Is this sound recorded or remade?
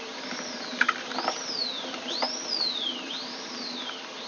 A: recorded